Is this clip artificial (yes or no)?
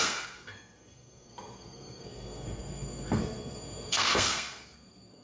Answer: yes